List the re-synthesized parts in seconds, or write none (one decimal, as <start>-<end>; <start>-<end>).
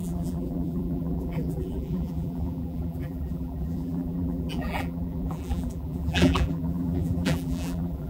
0.0-8.1